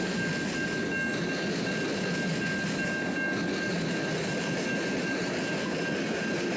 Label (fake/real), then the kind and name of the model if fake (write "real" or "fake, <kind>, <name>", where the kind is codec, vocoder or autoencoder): real